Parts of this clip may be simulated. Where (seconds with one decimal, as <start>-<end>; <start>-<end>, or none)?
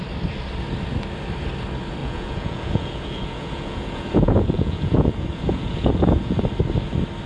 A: 2.0-6.4